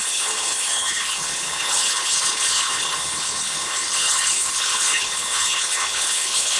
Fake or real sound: fake